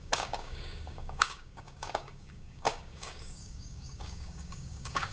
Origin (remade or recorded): remade